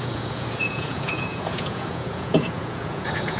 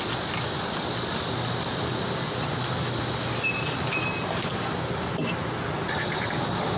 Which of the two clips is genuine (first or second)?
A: second